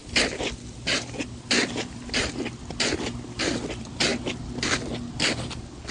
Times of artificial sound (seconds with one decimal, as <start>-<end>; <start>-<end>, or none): none